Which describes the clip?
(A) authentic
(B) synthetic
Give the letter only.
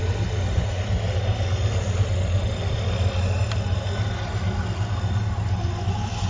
A